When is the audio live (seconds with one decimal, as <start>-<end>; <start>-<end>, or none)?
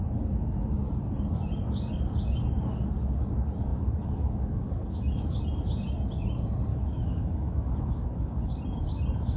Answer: 0.0-3.7; 5.4-6.7; 8.3-9.4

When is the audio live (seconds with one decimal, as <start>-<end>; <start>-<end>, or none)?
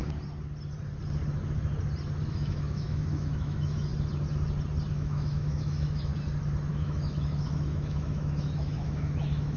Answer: 0.0-2.3; 3.9-4.9; 6.1-6.7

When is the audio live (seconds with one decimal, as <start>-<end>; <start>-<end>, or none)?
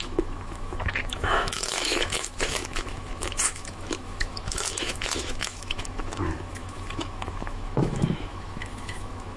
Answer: none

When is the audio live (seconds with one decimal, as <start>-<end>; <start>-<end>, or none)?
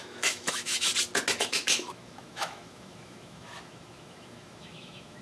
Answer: 0.9-1.4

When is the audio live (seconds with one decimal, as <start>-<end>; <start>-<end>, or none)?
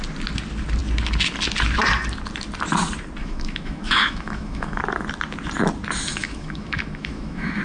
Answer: 0.0-3.2; 4.8-6.1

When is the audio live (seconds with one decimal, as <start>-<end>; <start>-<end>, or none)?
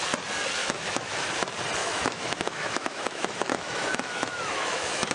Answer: 0.0-0.6; 1.3-1.8